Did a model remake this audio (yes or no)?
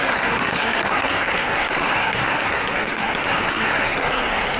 yes